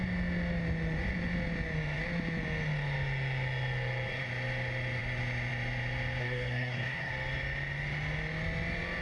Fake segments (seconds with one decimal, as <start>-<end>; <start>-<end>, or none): 6.2-7.1